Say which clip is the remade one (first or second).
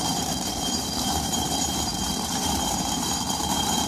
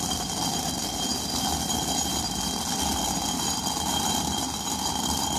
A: first